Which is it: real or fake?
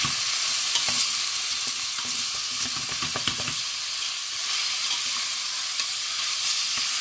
real